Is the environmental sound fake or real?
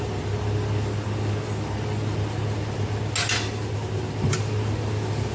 real